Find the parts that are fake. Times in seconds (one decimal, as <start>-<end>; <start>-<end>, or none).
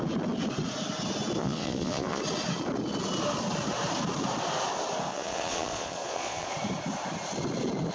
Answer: 1.4-2.2; 5.1-6.5